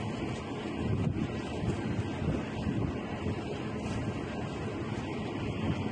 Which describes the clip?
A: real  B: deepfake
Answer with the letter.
A